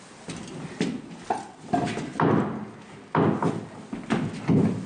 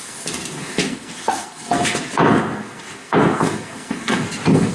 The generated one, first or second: second